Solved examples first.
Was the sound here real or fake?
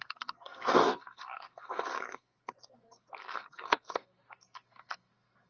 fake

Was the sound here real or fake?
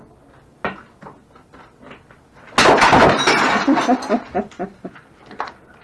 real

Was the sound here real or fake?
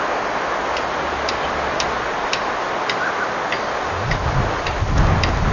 real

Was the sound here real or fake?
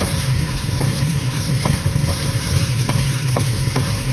fake